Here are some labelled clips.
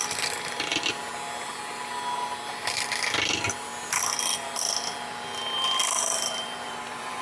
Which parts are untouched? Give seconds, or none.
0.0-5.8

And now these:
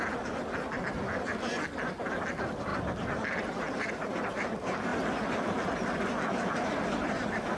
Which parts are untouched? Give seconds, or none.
4.9-6.0

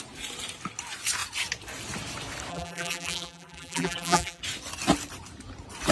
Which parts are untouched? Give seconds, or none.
0.0-2.5; 4.4-5.9